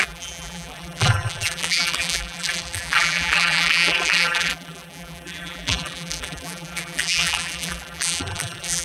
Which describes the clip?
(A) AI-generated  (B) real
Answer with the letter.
A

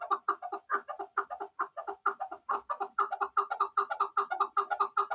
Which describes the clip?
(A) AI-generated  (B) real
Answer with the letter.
B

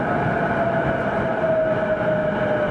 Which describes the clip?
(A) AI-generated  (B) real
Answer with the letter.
B